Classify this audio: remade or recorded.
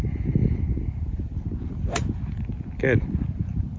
recorded